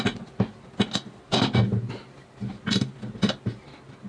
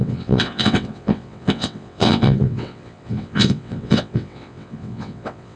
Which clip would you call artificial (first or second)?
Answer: second